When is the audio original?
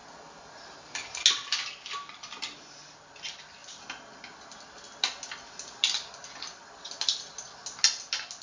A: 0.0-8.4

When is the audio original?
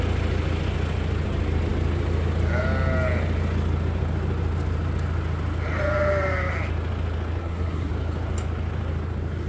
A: 0.0-7.4; 7.9-9.5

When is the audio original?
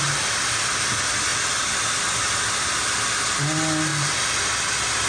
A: 0.0-5.1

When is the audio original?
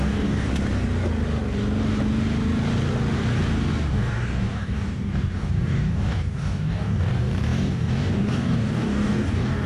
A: 0.5-3.9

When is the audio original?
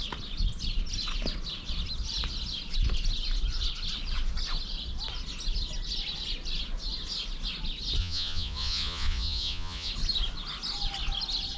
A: 0.0-8.0; 9.9-11.6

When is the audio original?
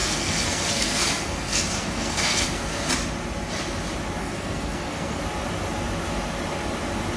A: 2.9-4.2; 5.2-7.2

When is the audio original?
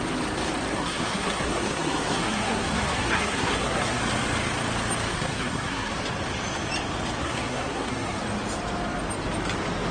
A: 0.0-0.7; 4.0-5.1; 5.9-7.2; 8.2-9.9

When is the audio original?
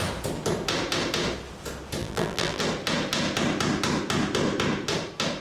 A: 0.0-2.0; 2.6-5.4